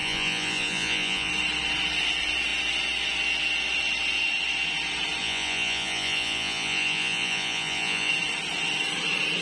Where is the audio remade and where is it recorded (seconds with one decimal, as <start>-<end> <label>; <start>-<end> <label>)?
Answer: 0.0-1.3 remade; 1.3-5.2 recorded; 5.2-8.1 remade; 8.1-9.4 recorded